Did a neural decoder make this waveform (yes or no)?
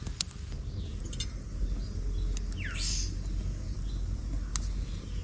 no